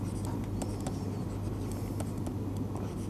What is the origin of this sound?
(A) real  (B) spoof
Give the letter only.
A